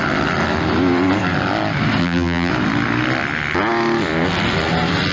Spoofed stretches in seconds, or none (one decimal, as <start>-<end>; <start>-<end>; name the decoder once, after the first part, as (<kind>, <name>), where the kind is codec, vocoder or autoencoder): 2.0-2.5 (vocoder, BigVGAN v2)